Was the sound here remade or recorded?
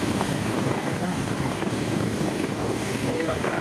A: remade